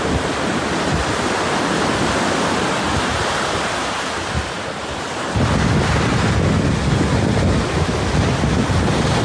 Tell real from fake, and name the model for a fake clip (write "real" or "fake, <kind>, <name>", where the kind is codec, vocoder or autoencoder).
real